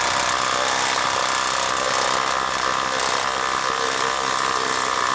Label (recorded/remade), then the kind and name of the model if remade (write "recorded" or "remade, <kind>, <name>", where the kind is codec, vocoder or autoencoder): recorded